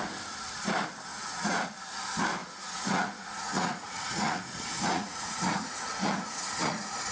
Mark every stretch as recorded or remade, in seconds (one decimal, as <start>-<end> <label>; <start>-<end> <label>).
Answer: 0.0-1.1 recorded; 1.1-1.7 remade; 1.7-2.4 recorded; 2.4-7.1 remade